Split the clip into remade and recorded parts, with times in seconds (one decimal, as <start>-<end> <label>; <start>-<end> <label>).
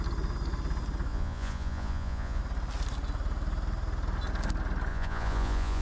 0.0-1.1 recorded; 1.1-2.4 remade; 2.4-4.9 recorded; 4.9-5.8 remade